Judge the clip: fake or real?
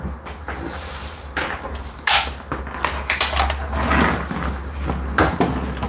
real